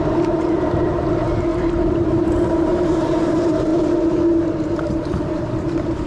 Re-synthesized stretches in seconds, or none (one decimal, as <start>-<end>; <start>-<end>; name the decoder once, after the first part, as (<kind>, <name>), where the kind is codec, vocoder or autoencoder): 0.0-3.7 (vocoder, BigVGAN v2); 4.8-6.1